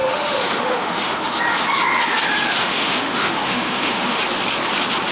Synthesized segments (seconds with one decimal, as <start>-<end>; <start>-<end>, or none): 0.0-1.4; 2.6-4.2